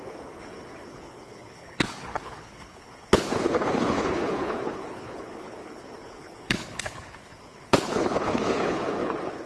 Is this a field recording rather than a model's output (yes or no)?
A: no